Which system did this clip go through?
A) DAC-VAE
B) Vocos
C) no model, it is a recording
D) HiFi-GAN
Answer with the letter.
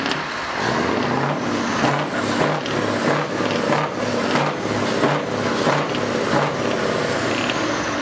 C